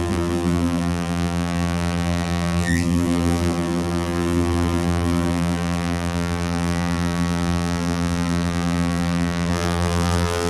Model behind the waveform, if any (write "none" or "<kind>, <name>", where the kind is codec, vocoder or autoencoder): vocoder, BigVGAN v2